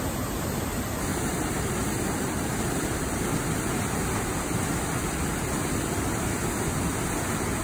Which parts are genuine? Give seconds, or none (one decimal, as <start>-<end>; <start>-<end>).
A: 0.0-1.1; 3.4-7.6